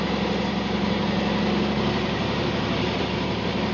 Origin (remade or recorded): recorded